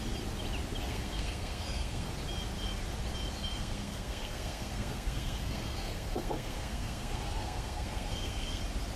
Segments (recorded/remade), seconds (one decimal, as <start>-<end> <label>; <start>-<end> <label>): 0.0-0.8 recorded; 0.8-2.1 remade; 2.1-3.5 recorded; 3.5-8.6 remade; 8.6-9.0 recorded